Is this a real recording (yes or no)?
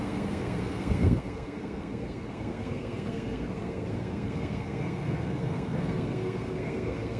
no